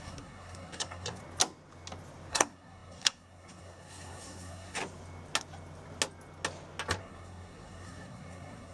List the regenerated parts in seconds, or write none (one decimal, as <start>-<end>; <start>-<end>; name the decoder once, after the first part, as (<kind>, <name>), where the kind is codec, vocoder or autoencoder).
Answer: 0.0-1.2 (codec, SNAC); 2.3-4.8; 7.0-8.7